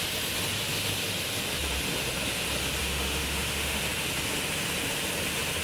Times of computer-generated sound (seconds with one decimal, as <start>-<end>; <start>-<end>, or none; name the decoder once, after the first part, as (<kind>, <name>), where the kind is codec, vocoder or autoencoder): 2.8-3.8 (autoencoder, DAC-VAE)